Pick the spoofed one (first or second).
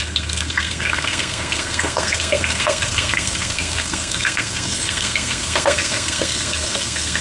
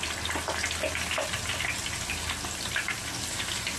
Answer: first